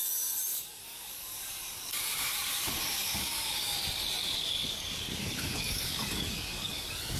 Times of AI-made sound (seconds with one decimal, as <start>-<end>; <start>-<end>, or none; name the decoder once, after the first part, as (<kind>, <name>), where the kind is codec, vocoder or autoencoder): 0.5-3.8 (codec, DAC); 4.2-7.2